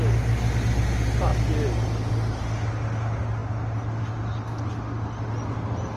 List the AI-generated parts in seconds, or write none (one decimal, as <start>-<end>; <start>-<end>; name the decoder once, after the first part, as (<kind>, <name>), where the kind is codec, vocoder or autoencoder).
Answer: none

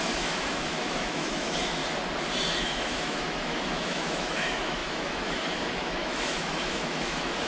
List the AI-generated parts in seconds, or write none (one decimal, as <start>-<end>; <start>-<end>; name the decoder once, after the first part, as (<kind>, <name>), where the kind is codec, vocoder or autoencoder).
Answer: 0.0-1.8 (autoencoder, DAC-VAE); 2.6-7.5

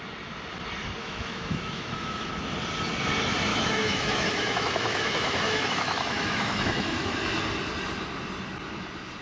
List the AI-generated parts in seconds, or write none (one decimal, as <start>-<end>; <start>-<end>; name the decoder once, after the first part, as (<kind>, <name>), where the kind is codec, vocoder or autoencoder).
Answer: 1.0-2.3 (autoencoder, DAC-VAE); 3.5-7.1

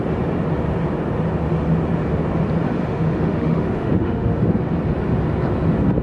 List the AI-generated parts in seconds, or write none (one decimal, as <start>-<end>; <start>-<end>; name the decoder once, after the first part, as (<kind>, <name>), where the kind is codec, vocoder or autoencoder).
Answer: 2.8-4.4 (autoencoder, DAC-VAE)

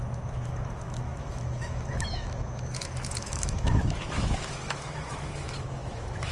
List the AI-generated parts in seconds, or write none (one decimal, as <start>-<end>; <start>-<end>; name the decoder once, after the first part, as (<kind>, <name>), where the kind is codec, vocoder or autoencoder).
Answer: 0.0-6.3 (autoencoder, DAC-VAE)